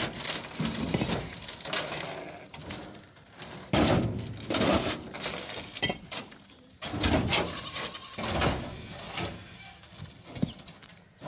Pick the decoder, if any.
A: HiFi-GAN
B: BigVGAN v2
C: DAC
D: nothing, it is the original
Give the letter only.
D